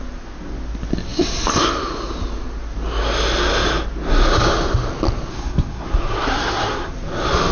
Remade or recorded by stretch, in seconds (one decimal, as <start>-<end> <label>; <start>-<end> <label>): 0.0-5.3 recorded; 5.3-6.9 remade; 6.9-7.5 recorded